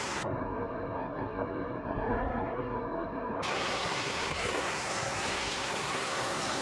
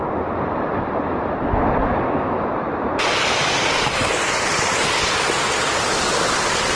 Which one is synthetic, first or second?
first